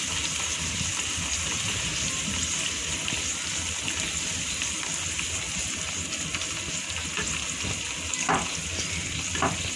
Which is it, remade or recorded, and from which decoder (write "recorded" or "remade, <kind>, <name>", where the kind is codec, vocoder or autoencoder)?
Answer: recorded